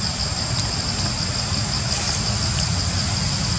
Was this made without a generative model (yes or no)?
yes